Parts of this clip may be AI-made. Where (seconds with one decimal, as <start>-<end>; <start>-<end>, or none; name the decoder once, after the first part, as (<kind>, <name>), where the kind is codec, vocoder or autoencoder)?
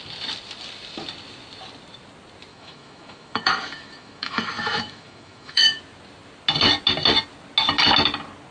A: 2.5-5.8 (autoencoder, DAC-VAE)